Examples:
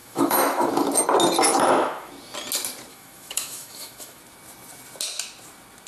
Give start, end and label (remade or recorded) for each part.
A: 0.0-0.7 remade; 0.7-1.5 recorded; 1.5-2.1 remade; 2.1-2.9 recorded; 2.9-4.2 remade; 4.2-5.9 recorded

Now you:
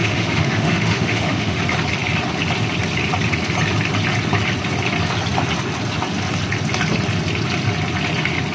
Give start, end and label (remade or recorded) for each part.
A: 0.0-1.6 remade; 1.6-8.5 recorded

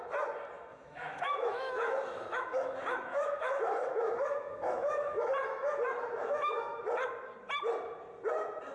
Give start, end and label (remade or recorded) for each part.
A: 0.0-0.7 recorded; 0.7-5.3 remade; 5.3-6.2 recorded; 6.2-6.8 remade; 6.8-8.7 recorded